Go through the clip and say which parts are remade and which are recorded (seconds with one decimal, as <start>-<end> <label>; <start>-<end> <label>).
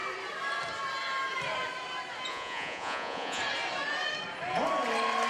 0.0-2.3 recorded; 2.3-3.4 remade; 3.4-5.3 recorded